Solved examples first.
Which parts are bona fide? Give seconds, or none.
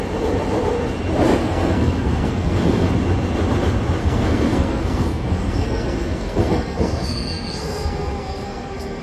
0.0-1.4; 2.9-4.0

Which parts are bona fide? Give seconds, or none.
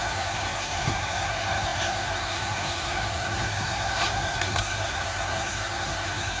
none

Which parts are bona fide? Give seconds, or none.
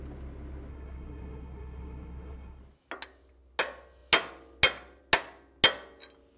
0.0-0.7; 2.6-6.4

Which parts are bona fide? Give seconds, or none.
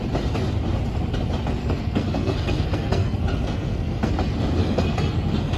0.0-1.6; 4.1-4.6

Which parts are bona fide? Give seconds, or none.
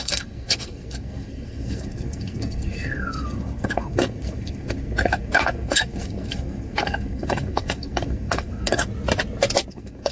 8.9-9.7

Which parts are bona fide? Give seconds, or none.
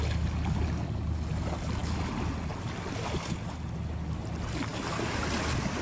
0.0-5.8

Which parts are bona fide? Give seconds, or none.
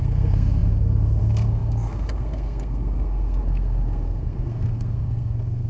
none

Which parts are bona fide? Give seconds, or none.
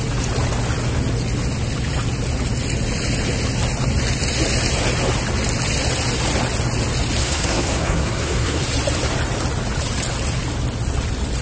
0.0-7.2; 8.6-11.4